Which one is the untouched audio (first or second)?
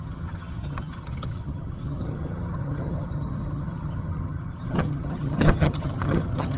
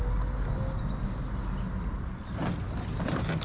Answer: second